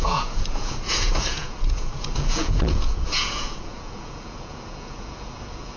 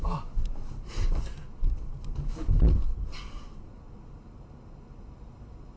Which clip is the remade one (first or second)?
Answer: first